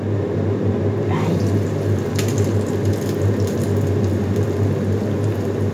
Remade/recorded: recorded